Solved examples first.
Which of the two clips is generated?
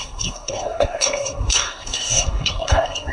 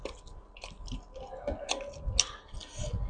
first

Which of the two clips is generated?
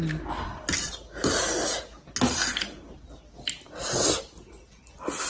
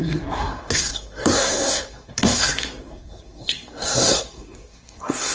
second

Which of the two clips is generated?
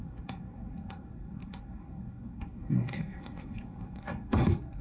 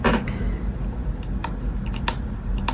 first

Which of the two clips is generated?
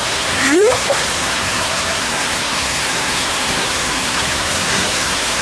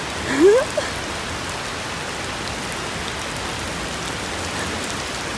first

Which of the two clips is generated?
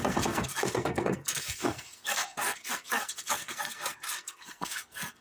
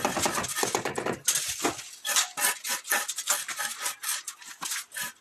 first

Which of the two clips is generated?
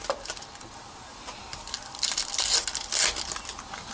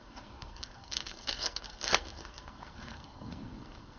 second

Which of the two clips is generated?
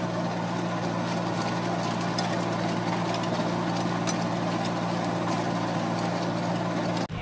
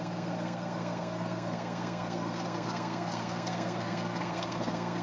second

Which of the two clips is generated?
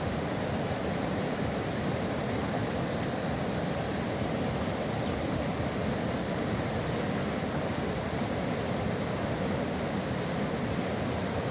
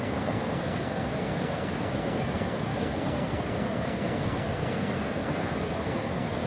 second